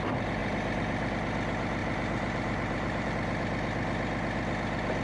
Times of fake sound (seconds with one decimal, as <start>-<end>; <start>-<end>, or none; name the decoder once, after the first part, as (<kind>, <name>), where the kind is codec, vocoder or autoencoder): 0.4-1.1 (vocoder, BigVGAN v2); 1.8-3.1